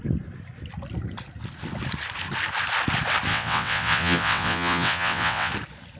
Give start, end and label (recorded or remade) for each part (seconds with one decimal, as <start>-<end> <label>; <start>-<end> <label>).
0.0-3.3 recorded; 3.3-5.5 remade; 5.5-6.0 recorded